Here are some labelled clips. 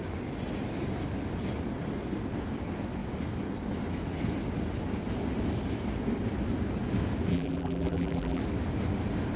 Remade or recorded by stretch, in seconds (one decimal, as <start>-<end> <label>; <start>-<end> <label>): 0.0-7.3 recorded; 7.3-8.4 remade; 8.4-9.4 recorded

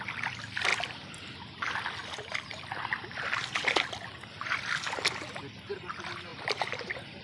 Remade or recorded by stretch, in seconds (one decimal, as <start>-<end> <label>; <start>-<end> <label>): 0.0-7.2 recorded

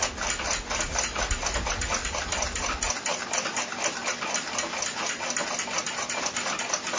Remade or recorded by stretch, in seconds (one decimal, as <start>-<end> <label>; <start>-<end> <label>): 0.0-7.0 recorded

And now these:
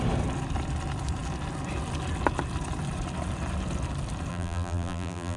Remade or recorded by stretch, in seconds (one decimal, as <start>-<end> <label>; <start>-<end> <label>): 0.0-4.3 recorded; 4.3-5.4 remade

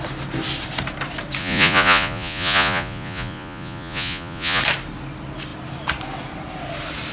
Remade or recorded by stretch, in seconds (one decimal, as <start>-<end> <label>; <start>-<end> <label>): 0.0-1.4 recorded; 1.4-4.6 remade; 4.6-7.1 recorded

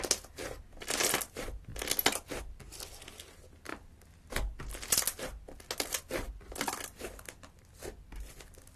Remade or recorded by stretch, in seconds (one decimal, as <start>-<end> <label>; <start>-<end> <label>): 0.0-8.8 recorded

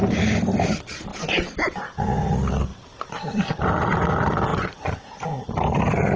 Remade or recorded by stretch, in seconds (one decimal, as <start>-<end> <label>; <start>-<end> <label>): 0.0-2.7 recorded; 2.7-4.1 remade; 4.1-4.5 recorded; 4.5-5.8 remade; 5.8-6.2 recorded